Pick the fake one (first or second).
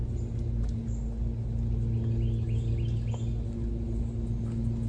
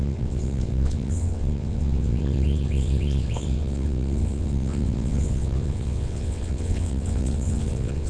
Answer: second